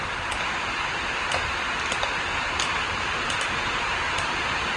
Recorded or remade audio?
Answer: recorded